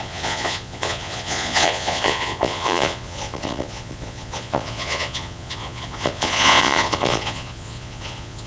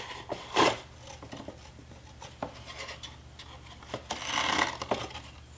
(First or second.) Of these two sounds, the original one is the second